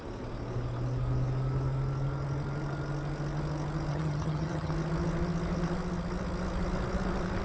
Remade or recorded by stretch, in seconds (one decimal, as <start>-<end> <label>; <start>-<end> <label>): 0.0-3.9 recorded; 3.9-4.7 remade; 4.7-7.4 recorded